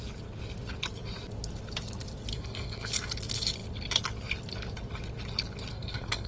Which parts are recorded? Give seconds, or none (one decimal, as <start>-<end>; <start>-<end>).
0.0-2.3; 2.9-5.7